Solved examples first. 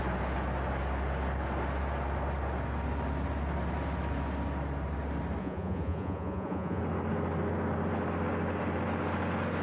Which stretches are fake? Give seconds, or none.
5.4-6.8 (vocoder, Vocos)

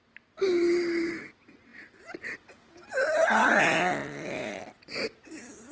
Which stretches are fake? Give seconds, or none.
4.0-4.6 (vocoder, BigVGAN v2)

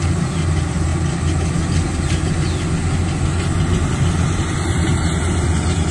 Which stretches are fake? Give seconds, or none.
none

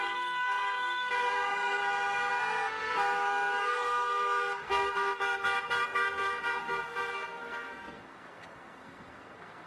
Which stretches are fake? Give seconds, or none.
0.0-1.8 (codec, SNAC); 2.3-9.7